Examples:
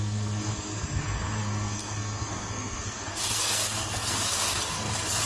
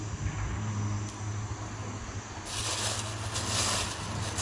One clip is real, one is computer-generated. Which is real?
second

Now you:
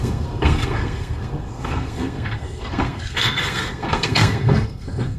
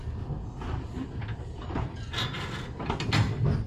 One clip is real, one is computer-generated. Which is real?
second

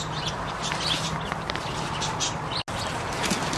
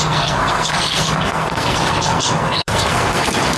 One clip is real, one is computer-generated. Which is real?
first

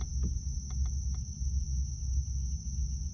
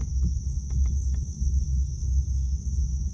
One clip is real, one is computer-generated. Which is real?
first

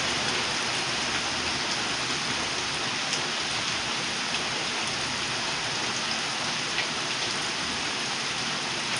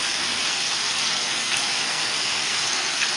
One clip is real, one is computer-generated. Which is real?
first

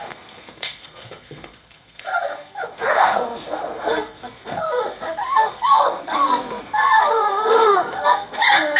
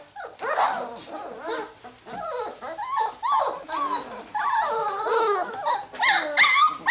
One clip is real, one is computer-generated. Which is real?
second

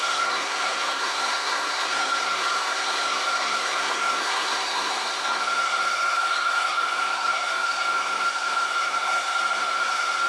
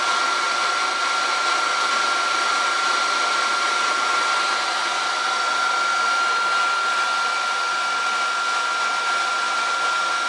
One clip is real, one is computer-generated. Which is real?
second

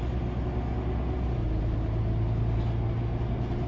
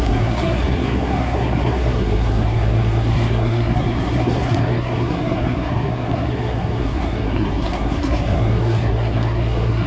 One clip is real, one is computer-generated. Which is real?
first